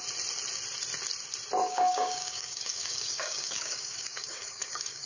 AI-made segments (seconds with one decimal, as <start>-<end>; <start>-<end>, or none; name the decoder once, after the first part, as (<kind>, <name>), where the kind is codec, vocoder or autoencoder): 1.6-5.1 (codec, DAC)